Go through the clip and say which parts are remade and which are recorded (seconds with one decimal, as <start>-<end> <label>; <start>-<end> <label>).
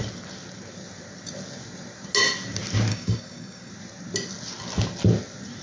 0.0-2.9 recorded; 2.9-3.7 remade; 3.7-5.6 recorded